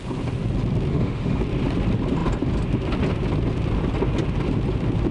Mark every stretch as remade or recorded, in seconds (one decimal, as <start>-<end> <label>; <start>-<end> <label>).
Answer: 0.0-0.9 recorded; 0.9-1.4 remade; 1.4-5.1 recorded